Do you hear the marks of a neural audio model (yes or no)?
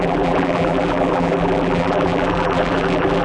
yes